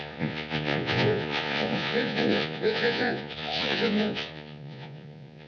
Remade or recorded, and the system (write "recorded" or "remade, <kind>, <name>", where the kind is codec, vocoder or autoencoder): remade, vocoder, Vocos